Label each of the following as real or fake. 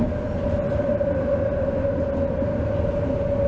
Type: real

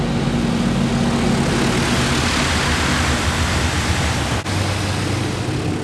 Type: real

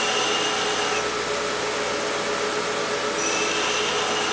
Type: real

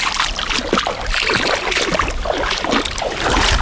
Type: real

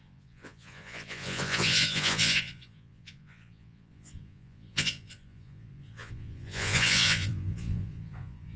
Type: fake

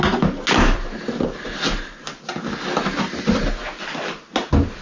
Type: real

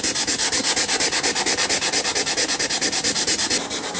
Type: real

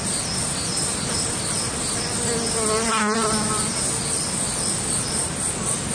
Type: real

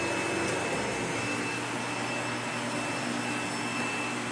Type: real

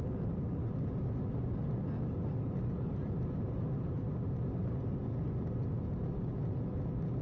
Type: real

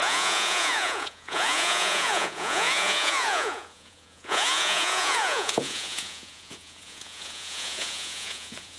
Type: fake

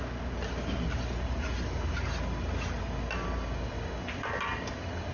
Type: real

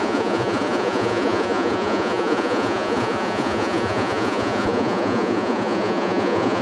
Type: fake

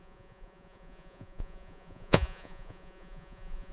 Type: fake